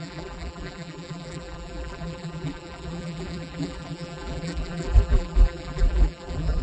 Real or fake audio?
fake